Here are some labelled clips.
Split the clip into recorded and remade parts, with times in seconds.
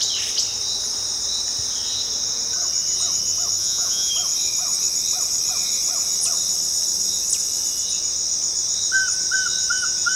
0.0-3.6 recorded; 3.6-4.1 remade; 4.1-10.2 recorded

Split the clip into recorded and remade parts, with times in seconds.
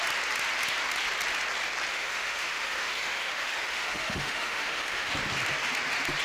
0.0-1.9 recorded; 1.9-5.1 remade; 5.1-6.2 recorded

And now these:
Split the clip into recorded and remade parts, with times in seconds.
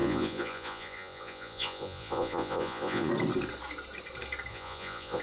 0.0-3.1 remade; 3.1-4.5 recorded; 4.5-5.2 remade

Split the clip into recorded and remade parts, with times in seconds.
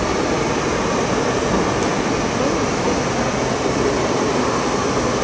0.0-5.2 recorded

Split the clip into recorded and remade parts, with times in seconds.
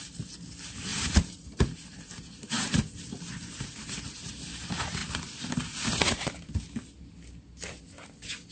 0.0-0.9 recorded; 0.9-2.6 remade; 2.6-8.5 recorded